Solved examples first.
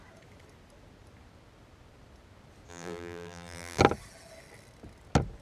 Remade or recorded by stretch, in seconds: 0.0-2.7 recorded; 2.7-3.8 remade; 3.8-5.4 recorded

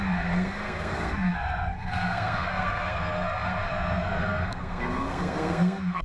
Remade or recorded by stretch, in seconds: 0.0-6.0 remade

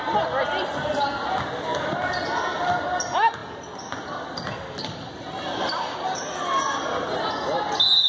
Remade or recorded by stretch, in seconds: 0.0-8.1 recorded

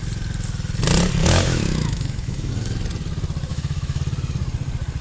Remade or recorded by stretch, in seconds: 0.0-1.2 recorded; 1.2-2.5 remade; 2.5-3.5 recorded; 3.5-4.0 remade; 4.0-5.0 recorded

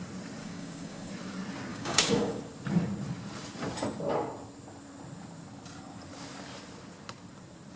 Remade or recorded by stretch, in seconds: 0.0-0.4 recorded; 0.4-1.1 remade; 1.1-1.7 recorded; 1.7-2.4 remade; 2.4-7.8 recorded

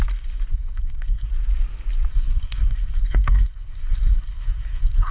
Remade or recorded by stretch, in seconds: 0.0-0.5 recorded; 0.5-1.3 remade; 1.3-2.1 recorded; 2.1-5.1 remade

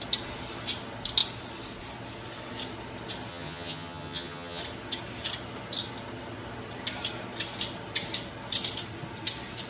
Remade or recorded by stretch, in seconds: 0.0-3.3 recorded; 3.3-4.6 remade; 4.6-9.7 recorded

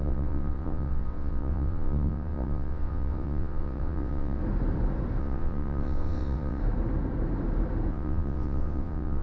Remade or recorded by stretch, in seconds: 0.0-4.4 remade; 4.4-5.2 recorded; 5.2-6.6 remade; 6.6-7.9 recorded; 7.9-9.2 remade